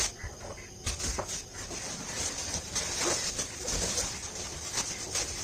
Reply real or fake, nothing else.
real